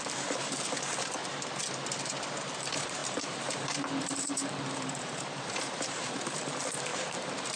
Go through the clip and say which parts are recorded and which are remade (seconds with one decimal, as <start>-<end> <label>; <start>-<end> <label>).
0.0-1.2 remade; 1.2-2.5 recorded; 2.5-7.6 remade